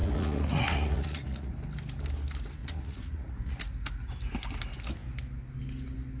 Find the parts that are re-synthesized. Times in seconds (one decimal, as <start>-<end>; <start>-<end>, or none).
0.0-1.5; 2.6-3.6